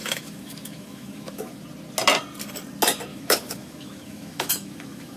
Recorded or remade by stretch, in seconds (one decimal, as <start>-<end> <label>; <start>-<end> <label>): 0.0-1.6 remade; 1.6-3.1 recorded; 3.1-5.2 remade